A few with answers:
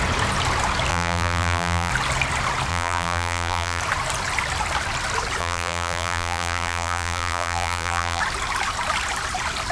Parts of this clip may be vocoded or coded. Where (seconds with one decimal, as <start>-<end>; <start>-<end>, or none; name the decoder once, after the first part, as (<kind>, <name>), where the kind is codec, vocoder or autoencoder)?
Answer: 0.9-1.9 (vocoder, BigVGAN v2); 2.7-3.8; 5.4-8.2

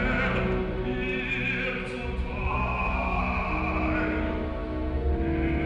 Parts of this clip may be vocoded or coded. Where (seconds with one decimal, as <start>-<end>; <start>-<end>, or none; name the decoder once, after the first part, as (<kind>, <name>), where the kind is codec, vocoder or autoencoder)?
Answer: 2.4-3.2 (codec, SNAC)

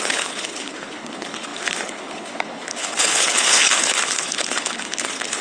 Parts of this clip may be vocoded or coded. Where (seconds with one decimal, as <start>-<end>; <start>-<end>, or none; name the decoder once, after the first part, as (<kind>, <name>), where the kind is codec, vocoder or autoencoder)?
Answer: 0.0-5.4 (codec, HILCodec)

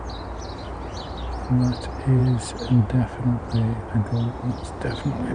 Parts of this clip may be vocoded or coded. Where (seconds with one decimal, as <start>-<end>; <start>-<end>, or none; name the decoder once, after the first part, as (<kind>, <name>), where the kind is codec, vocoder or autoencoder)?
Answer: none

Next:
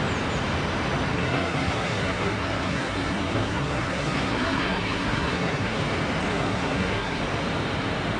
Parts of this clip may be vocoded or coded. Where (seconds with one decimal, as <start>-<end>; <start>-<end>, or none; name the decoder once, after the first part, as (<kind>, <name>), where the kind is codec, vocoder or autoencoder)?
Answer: 1.1-5.8 (codec, SNAC); 6.3-7.2

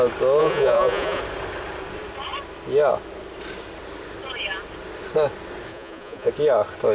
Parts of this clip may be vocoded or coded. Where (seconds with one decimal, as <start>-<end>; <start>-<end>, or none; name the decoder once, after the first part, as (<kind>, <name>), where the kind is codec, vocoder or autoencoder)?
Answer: 0.4-1.2 (vocoder, Vocos); 5.7-6.3

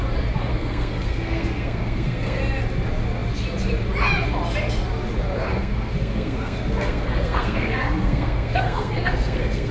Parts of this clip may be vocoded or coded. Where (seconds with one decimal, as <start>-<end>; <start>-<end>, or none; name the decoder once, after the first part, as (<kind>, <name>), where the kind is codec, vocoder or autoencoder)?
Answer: 0.5-2.4 (codec, SNAC); 5.5-9.7